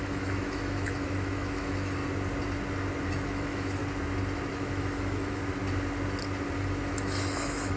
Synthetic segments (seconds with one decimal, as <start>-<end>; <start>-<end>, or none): 0.0-2.0; 3.1-3.8; 4.5-5.4; 6.7-7.8